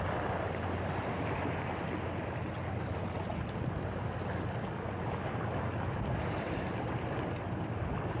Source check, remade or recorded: recorded